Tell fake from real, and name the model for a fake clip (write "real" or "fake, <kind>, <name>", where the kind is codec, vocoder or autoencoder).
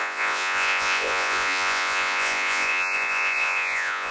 fake, vocoder, Vocos